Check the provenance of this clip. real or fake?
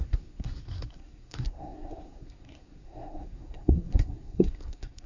fake